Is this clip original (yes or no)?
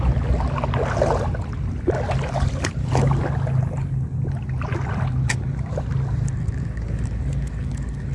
yes